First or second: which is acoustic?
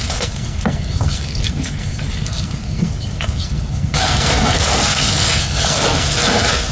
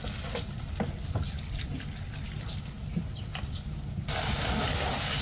second